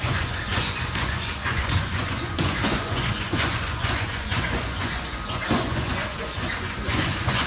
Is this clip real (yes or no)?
no